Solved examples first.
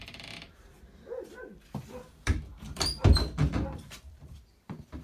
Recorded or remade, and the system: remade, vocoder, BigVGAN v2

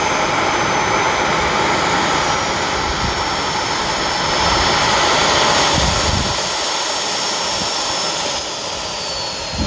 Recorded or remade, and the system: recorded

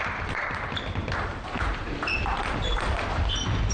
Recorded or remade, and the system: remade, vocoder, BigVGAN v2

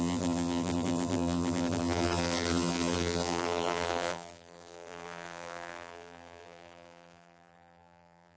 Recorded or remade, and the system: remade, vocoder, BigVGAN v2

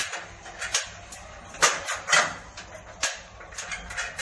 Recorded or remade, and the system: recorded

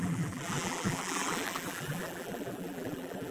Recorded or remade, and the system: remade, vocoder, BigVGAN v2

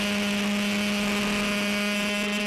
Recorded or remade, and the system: recorded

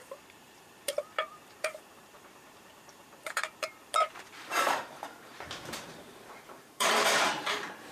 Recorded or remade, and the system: remade, vocoder, BigVGAN v2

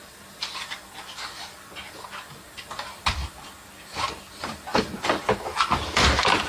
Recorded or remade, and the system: remade, vocoder, BigVGAN v2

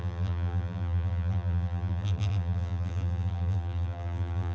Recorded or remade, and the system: remade, vocoder, BigVGAN v2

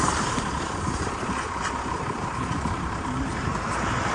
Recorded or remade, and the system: remade, vocoder, BigVGAN v2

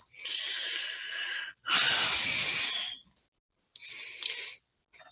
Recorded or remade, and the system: recorded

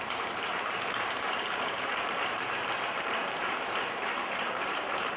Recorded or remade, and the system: remade, vocoder, BigVGAN v2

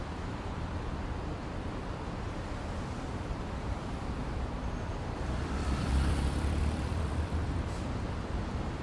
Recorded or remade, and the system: remade, vocoder, BigVGAN v2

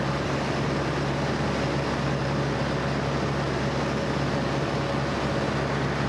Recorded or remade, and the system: recorded